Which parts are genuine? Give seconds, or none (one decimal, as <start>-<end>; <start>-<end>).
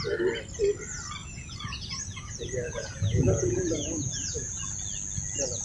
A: 0.0-1.2; 4.6-5.6